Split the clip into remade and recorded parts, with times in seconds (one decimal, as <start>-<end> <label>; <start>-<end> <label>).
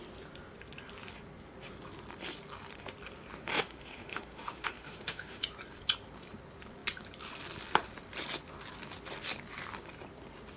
0.0-3.5 recorded; 3.5-5.4 remade; 5.4-10.6 recorded